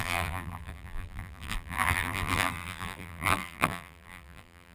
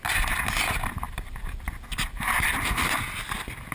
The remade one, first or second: first